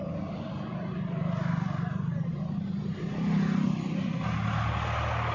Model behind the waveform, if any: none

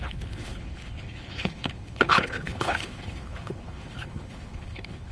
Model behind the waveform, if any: codec, HILCodec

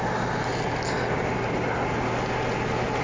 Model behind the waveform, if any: none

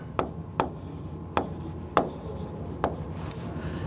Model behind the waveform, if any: none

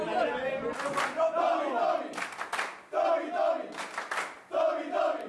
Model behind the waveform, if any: none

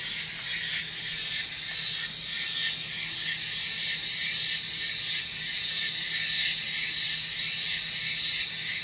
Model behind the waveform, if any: none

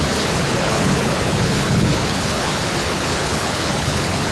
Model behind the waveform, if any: codec, HILCodec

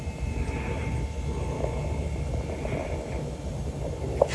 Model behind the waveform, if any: none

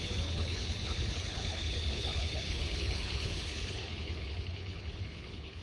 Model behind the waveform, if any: codec, HILCodec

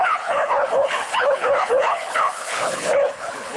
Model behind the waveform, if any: codec, HILCodec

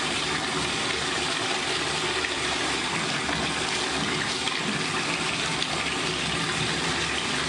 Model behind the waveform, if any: none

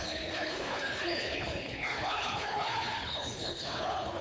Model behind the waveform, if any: codec, HILCodec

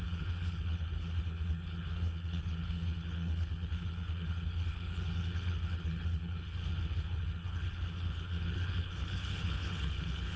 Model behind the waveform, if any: codec, HILCodec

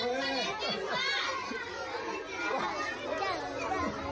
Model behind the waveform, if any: none